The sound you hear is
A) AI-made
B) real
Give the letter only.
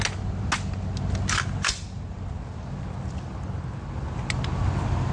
B